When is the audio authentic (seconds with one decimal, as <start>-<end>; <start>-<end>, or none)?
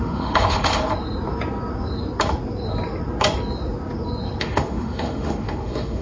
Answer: 0.8-4.4